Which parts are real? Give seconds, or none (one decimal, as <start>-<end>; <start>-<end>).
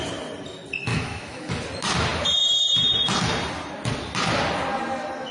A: 0.0-0.9; 1.5-5.3